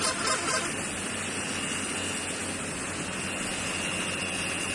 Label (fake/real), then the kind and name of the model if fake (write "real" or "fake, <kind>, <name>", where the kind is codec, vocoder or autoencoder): real